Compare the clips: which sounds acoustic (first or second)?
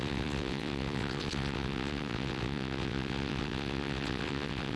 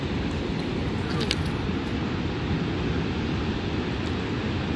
second